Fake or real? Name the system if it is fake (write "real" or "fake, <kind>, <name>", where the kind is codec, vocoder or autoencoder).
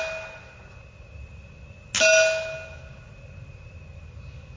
real